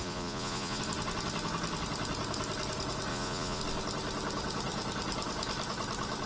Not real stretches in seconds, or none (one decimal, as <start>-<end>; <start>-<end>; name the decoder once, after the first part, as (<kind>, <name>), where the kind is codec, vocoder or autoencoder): 0.0-0.8 (vocoder, Vocos); 3.1-3.6